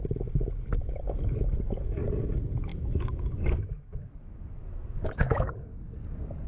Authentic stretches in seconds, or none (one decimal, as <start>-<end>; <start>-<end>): 0.0-2.7; 5.5-6.5